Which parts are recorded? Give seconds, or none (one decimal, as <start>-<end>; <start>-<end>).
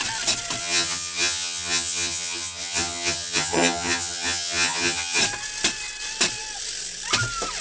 0.0-0.6; 5.2-7.6